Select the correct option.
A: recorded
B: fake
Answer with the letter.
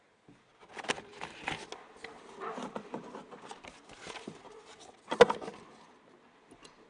A